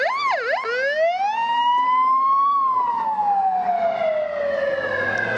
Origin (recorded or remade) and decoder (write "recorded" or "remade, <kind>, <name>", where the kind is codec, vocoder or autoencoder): recorded